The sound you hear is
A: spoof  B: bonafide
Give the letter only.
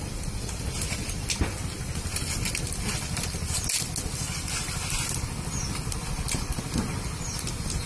B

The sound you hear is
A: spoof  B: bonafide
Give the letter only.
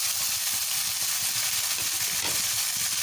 B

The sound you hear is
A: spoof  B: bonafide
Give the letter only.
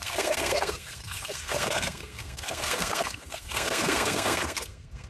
A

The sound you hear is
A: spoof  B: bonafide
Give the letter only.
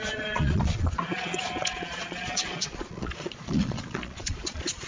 A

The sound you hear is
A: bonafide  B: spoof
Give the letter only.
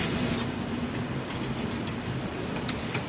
B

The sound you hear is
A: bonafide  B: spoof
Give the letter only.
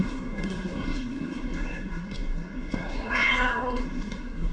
B